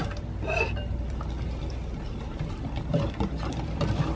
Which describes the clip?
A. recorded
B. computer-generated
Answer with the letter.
B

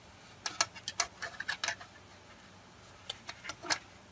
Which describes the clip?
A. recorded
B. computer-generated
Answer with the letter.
A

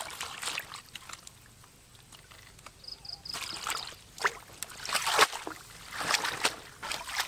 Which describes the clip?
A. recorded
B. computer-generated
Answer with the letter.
A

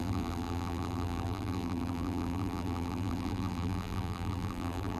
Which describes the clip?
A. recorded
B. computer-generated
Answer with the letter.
B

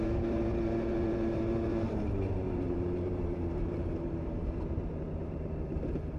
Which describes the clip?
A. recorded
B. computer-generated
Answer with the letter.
B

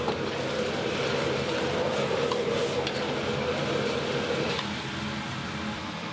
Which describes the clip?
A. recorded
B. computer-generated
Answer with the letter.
A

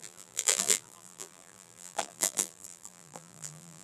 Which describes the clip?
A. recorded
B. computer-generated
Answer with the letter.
B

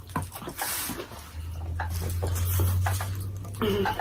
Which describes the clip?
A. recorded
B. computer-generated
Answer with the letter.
A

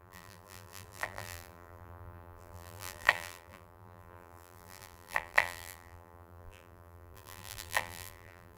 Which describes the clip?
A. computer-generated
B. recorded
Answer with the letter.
A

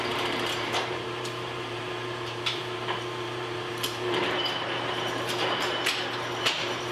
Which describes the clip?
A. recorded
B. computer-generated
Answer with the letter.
B